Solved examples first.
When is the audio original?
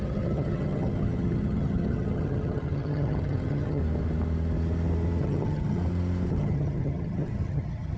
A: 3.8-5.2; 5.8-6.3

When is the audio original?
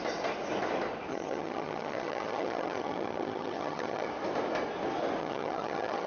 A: 0.0-1.1; 4.1-5.2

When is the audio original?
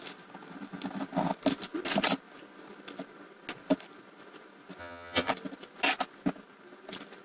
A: 0.0-4.8; 5.3-7.2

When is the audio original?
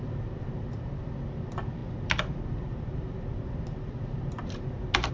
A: 0.0-5.1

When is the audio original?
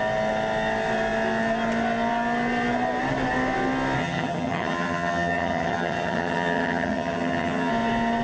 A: 0.0-4.0; 7.7-8.2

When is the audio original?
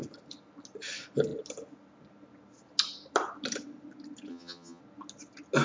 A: 0.0-4.3; 4.8-5.6